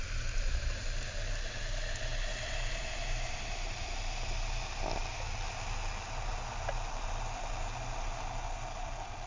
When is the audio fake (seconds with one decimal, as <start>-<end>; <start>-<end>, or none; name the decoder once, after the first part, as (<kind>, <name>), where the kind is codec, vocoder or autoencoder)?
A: none